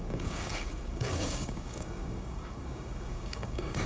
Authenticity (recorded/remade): remade